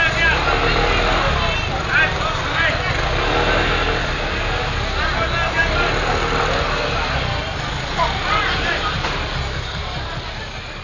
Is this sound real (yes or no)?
yes